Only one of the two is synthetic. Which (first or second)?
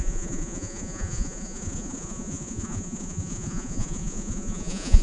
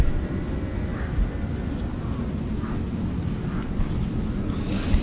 first